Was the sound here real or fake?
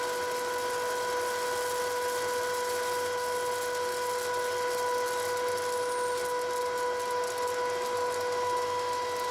real